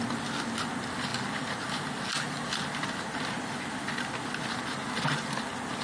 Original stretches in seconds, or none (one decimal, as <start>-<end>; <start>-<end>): 0.0-5.8